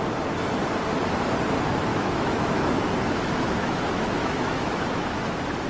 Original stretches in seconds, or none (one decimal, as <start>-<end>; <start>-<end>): 0.0-1.9; 5.3-5.7